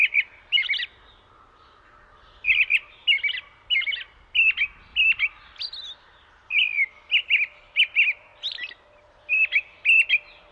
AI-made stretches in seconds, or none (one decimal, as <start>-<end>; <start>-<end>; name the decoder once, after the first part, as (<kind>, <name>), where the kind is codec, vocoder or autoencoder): none